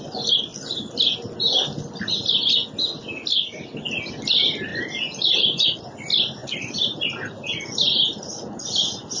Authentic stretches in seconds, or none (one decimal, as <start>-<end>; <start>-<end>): 0.0-4.7; 5.8-6.4; 8.2-9.2